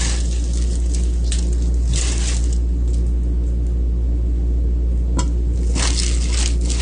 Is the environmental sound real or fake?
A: real